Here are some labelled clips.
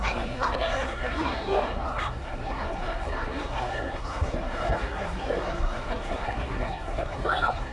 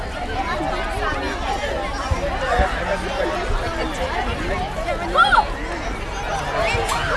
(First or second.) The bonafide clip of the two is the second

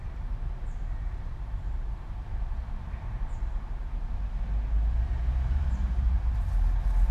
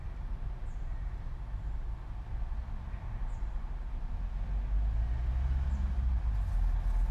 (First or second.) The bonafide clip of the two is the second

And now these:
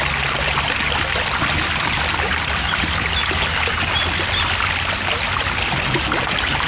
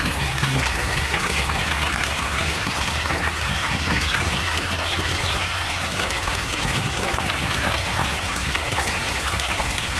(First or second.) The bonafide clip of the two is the first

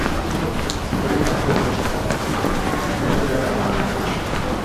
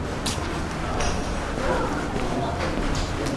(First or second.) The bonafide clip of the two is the first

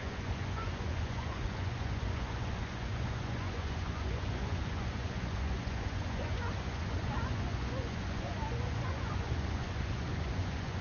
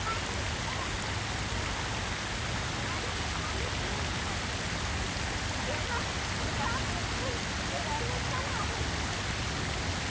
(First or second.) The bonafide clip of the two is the second